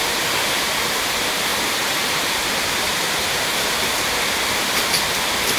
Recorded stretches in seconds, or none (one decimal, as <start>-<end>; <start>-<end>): 0.0-1.5; 2.1-2.9; 3.5-5.6